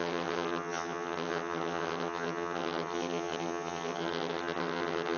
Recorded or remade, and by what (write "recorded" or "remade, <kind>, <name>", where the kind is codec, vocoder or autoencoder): remade, vocoder, HiFi-GAN